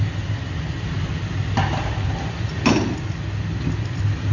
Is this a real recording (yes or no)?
no